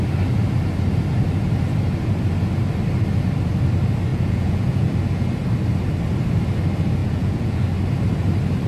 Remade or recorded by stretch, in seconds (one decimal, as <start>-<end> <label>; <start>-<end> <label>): 0.0-4.1 recorded; 4.1-4.9 remade; 4.9-7.0 recorded; 7.0-7.6 remade; 7.6-8.7 recorded